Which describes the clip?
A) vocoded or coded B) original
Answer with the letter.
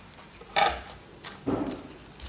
B